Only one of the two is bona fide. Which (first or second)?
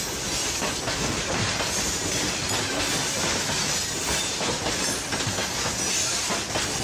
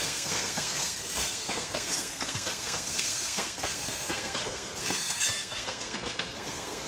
first